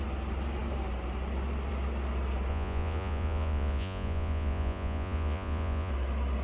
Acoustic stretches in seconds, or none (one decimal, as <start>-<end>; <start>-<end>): 0.0-2.5; 5.9-6.4